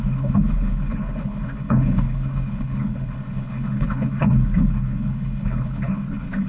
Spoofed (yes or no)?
yes